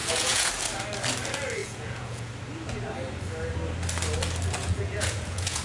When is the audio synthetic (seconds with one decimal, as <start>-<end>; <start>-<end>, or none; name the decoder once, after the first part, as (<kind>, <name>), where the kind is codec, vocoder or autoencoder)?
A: 0.0-0.5 (vocoder, Vocos); 1.6-2.3; 4.6-5.6